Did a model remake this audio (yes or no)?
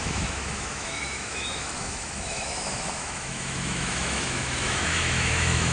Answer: yes